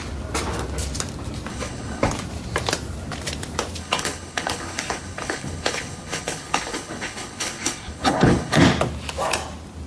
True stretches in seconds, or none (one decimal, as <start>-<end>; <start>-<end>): 0.0-1.5; 2.1-3.8; 8.6-9.9